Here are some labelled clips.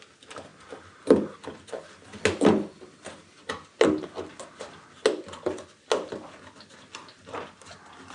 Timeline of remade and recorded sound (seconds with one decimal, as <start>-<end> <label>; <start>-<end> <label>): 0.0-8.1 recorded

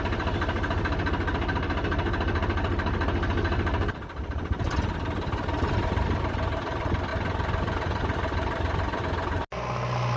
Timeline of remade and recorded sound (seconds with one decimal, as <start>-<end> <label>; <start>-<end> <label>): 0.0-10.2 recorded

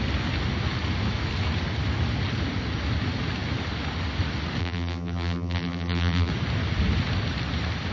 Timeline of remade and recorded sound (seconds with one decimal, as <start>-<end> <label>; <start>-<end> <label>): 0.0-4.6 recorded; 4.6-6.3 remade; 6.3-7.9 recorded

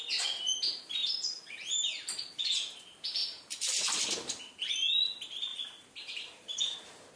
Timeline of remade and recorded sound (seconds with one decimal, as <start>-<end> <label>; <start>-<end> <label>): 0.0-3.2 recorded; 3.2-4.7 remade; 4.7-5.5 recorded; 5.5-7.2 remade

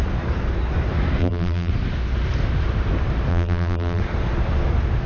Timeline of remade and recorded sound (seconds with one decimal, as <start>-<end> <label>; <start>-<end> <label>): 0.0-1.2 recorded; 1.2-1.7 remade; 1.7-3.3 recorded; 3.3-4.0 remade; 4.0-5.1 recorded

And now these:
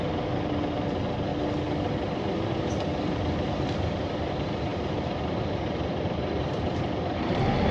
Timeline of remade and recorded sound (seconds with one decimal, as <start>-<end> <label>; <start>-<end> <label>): 0.0-1.3 remade; 1.3-2.4 recorded; 2.4-7.7 remade